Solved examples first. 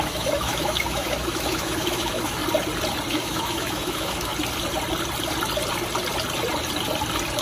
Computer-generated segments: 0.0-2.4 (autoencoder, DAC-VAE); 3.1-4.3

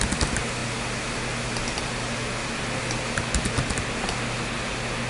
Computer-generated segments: none

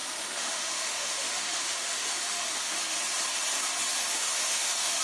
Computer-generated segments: 0.0-3.0 (autoencoder, DAC-VAE); 4.0-5.0